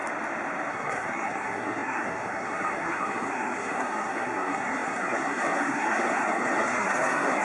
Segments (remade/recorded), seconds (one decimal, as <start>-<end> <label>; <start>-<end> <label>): 0.0-0.7 recorded; 0.7-7.4 remade